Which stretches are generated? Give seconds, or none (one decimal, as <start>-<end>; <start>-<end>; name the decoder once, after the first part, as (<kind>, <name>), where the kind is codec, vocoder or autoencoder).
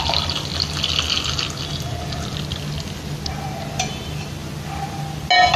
none